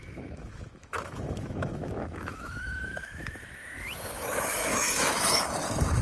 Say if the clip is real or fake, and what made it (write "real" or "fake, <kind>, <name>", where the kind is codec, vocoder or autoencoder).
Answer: fake, autoencoder, DAC-VAE